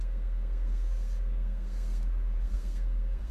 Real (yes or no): no